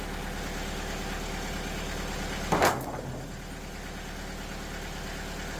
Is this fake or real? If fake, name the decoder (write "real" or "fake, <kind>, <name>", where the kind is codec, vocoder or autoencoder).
real